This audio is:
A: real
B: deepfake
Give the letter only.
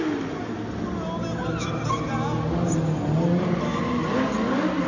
A